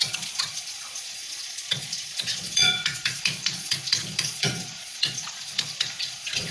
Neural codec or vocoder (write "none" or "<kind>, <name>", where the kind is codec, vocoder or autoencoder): vocoder, Vocos